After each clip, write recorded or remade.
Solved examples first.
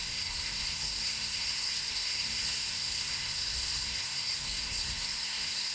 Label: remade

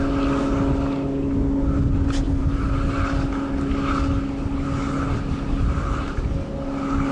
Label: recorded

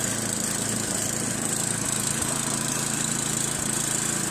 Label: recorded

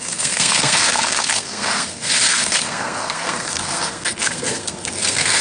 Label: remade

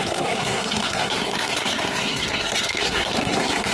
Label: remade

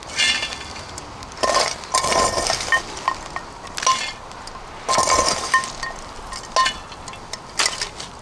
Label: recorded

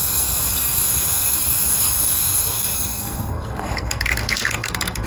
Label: remade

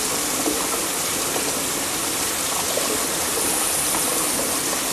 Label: recorded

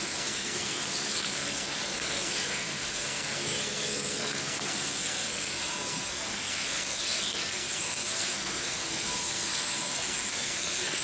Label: remade